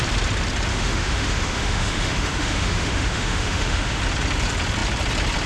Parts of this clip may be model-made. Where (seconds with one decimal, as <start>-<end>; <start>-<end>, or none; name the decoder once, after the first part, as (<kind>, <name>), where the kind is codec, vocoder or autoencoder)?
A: 0.7-4.0 (autoencoder, DAC-VAE)